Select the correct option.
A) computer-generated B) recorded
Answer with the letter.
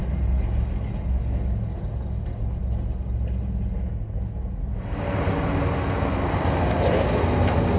B